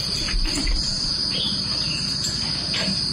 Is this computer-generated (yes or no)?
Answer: no